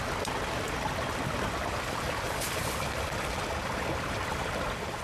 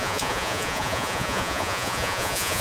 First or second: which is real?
first